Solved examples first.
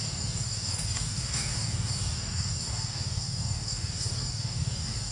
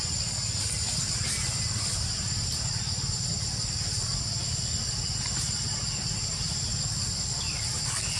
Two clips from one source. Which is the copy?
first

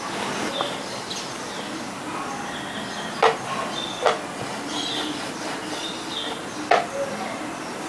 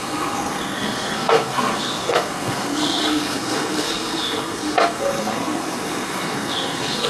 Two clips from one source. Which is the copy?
second